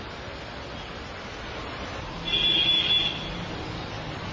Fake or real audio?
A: real